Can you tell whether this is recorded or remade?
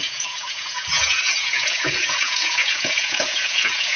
remade